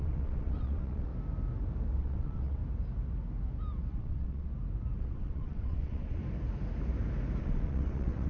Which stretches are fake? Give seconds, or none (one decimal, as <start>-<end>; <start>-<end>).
0.0-1.1; 2.0-2.6; 3.9-4.5; 5.0-6.2; 7.4-8.3